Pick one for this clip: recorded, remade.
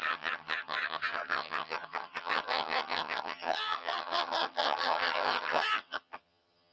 remade